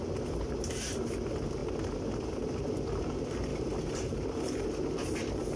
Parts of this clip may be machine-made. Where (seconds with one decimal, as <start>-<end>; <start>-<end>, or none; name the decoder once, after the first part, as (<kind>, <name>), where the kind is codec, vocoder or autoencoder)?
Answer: 3.5-4.7 (vocoder, BigVGAN v2)